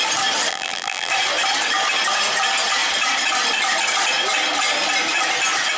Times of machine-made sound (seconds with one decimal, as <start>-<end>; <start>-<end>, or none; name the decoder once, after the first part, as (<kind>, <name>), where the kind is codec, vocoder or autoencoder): 0.5-1.1 (vocoder, BigVGAN v2)